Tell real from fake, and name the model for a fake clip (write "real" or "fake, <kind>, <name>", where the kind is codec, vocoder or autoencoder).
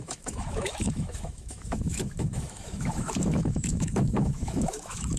fake, autoencoder, DAC-VAE